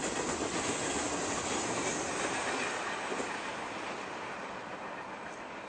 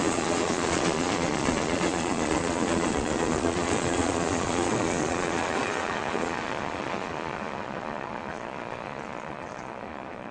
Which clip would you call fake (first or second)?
second